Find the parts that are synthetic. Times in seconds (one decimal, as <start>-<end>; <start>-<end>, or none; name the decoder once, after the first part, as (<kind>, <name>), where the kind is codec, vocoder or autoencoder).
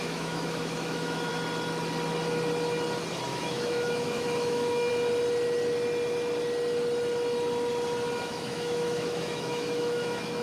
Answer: 0.0-1.3 (autoencoder, DAC-VAE); 3.3-4.9; 8.2-10.4